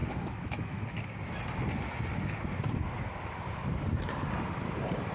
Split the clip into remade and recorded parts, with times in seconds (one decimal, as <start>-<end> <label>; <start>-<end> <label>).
0.0-0.8 remade; 0.8-5.1 recorded